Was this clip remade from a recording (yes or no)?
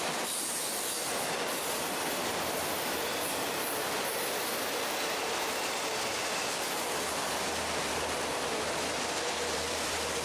yes